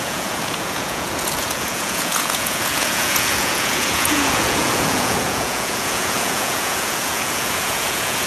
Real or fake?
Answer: fake